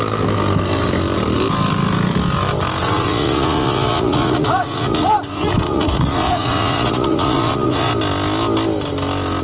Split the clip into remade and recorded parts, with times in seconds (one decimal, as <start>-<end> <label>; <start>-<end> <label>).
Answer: 0.0-2.8 recorded; 2.8-7.9 remade; 7.9-9.4 recorded

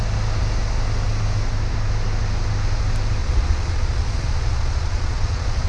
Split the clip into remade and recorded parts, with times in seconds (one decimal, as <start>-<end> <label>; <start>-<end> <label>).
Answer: 0.0-3.2 recorded; 3.2-5.7 remade

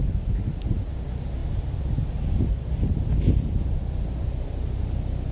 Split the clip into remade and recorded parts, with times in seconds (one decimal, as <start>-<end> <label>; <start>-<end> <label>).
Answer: 0.0-5.3 recorded

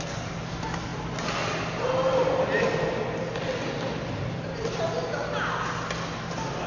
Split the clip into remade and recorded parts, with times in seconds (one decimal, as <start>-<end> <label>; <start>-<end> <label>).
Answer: 0.0-6.7 recorded

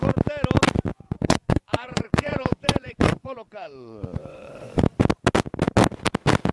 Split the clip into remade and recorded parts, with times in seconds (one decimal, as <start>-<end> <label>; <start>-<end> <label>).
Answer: 0.0-0.9 recorded; 0.9-4.8 remade; 4.8-6.5 recorded

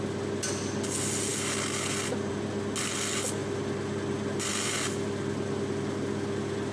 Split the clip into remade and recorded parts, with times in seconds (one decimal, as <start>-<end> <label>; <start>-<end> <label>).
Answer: 0.0-6.7 recorded

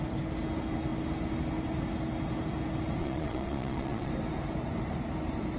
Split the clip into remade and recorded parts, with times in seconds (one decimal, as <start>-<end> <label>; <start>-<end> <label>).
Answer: 0.0-3.0 recorded; 3.0-4.1 remade; 4.1-5.6 recorded